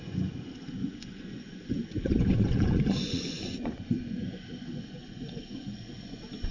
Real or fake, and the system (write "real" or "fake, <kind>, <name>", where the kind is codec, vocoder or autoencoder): fake, vocoder, Vocos